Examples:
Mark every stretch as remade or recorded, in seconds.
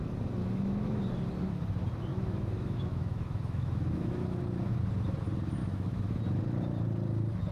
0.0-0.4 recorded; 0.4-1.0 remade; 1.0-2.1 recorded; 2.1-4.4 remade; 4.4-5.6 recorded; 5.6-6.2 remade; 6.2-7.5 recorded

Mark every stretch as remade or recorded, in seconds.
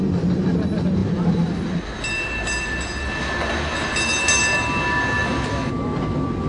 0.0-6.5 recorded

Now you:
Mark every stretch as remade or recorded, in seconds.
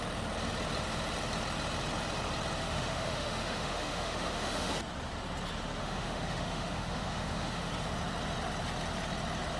0.0-2.6 recorded; 2.6-4.7 remade; 4.7-5.8 recorded; 5.8-7.7 remade; 7.7-9.6 recorded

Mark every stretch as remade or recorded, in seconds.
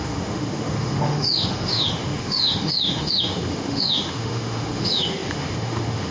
0.0-6.1 remade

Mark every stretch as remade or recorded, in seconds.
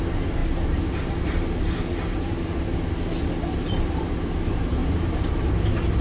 0.0-0.4 recorded; 0.4-2.6 remade; 2.6-4.8 recorded; 4.8-5.4 remade; 5.4-6.0 recorded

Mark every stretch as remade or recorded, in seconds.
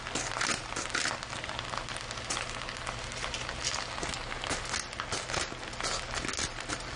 0.0-7.0 recorded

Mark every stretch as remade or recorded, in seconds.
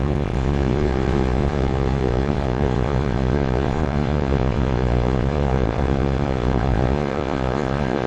0.0-8.1 remade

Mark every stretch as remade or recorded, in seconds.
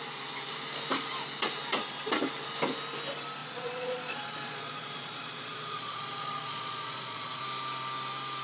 0.0-3.4 recorded; 3.4-7.4 remade; 7.4-8.4 recorded